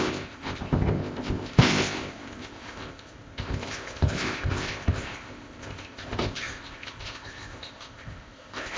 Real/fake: fake